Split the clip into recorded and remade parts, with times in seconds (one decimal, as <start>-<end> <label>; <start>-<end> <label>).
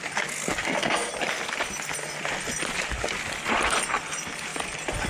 0.0-0.6 recorded; 0.6-1.1 remade; 1.1-5.1 recorded